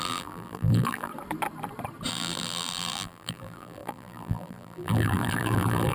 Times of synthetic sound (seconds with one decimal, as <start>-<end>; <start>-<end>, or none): 0.0-1.1; 2.1-5.9